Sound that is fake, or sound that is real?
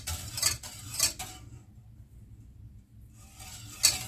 real